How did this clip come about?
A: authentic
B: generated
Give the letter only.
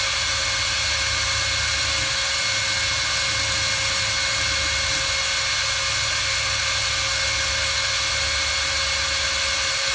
A